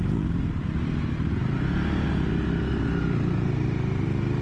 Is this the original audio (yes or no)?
yes